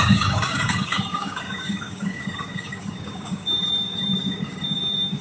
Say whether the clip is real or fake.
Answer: fake